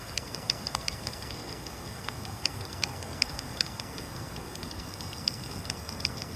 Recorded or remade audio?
remade